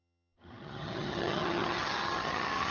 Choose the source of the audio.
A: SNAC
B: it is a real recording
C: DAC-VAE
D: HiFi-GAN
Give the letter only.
D